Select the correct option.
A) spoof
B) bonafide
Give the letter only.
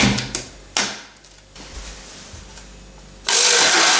B